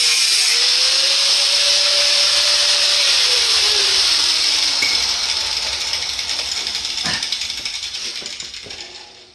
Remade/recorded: remade